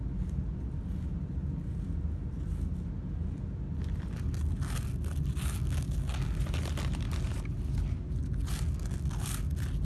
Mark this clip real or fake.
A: real